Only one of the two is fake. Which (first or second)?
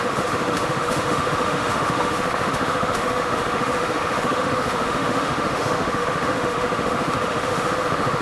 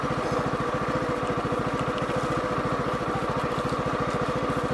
first